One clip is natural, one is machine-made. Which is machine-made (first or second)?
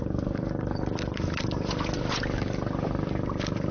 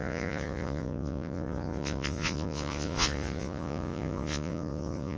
second